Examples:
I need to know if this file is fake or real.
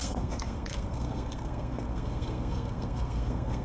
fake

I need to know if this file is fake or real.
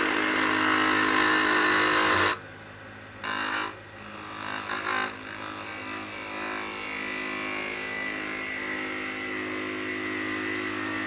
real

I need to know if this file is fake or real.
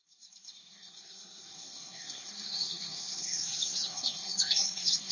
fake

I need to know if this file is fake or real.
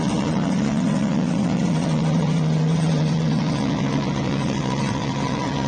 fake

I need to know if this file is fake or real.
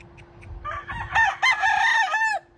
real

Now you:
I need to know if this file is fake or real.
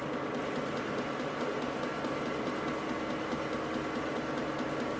real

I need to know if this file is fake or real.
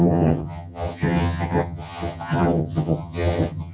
fake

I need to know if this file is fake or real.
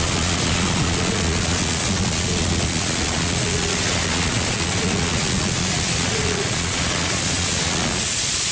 fake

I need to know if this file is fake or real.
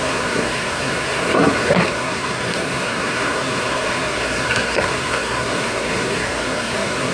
fake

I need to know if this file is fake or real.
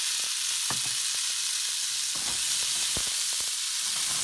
real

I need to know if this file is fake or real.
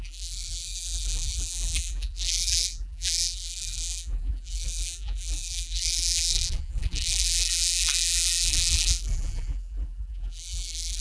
fake